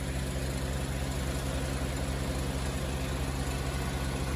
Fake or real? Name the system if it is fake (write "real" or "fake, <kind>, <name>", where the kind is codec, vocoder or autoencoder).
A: real